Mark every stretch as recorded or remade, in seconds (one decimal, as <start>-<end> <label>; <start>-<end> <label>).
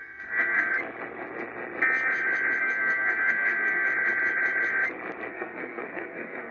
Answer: 0.0-0.7 remade; 0.7-2.6 recorded; 2.6-3.9 remade; 3.9-5.3 recorded; 5.3-6.5 remade